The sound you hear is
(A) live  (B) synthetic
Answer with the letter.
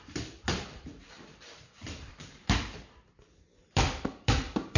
B